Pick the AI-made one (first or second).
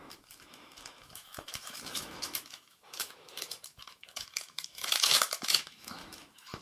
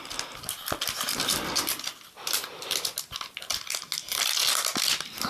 first